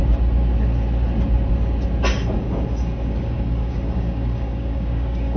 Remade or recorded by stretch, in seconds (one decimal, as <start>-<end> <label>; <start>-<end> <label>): 0.0-2.1 recorded; 2.1-5.4 remade